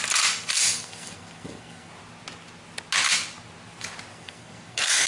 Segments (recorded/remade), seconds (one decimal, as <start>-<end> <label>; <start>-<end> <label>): 0.0-0.5 recorded; 0.5-1.9 remade; 1.9-4.1 recorded; 4.1-5.1 remade